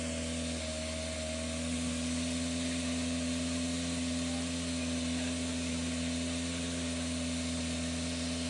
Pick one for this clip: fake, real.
real